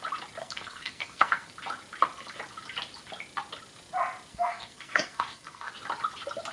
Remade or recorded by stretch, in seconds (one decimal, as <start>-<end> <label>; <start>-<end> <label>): 0.0-0.4 recorded; 0.4-1.5 remade; 1.5-4.3 recorded; 4.3-5.7 remade; 5.7-6.5 recorded